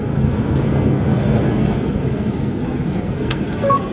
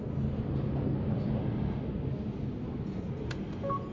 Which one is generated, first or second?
first